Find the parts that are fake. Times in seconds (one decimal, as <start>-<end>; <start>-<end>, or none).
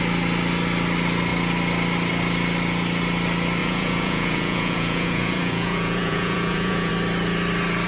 3.6-6.9